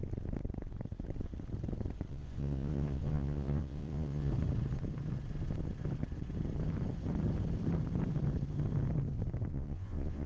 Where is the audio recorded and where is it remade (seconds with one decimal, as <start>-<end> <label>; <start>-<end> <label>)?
0.0-2.1 recorded; 2.1-4.3 remade; 4.3-9.5 recorded; 9.5-10.3 remade